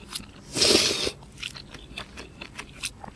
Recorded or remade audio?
recorded